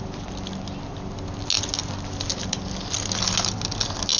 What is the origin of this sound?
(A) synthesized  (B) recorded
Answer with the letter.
B